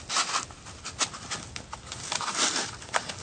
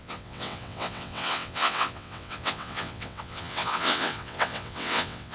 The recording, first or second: first